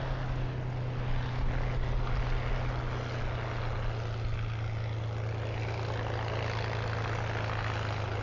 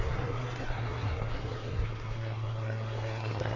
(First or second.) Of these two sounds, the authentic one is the first